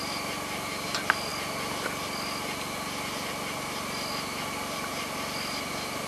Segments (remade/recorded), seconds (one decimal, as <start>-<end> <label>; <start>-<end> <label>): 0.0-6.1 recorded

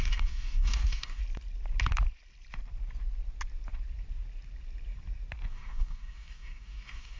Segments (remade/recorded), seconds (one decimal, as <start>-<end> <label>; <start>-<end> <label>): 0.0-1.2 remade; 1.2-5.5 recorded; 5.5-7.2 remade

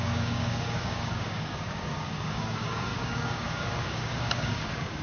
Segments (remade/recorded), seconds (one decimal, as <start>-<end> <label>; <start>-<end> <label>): 0.0-5.0 remade

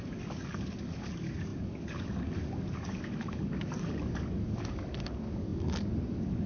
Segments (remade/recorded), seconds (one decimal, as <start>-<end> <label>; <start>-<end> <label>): 0.0-6.5 remade

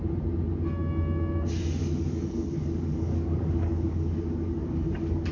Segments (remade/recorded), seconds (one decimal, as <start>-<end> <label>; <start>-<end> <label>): 0.0-1.8 recorded; 1.8-5.3 remade